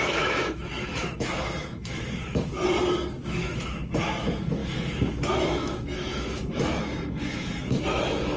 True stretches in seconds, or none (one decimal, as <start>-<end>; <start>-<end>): 2.5-3.2